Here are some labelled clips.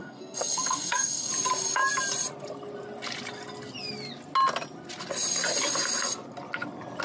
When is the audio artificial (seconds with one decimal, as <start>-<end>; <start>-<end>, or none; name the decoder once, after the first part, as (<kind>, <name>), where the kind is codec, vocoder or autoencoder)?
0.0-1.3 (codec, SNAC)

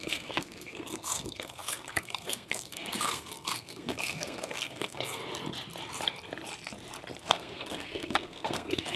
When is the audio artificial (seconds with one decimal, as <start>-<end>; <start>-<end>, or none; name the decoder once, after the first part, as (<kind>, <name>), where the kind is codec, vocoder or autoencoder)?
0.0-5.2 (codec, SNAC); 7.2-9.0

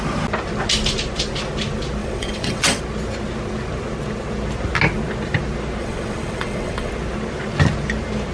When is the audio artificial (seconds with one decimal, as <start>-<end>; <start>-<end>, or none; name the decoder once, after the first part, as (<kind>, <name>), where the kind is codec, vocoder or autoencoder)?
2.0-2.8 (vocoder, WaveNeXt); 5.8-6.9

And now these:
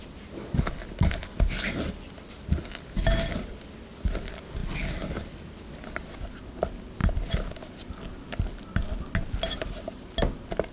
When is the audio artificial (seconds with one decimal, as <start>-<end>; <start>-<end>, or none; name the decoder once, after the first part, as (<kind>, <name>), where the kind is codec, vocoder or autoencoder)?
none

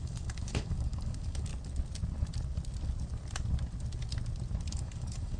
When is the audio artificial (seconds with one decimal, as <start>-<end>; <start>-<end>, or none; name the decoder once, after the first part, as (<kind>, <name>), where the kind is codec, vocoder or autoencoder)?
0.0-1.5 (codec, DAC); 4.7-5.4

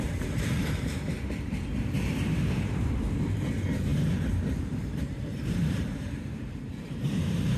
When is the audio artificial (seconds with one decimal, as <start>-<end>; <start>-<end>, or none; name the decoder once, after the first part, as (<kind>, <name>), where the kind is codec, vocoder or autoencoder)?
0.0-7.6 (vocoder, BigVGAN v2)